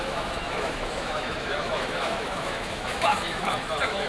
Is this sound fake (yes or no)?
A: yes